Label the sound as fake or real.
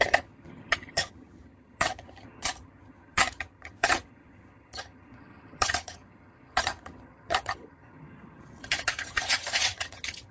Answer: fake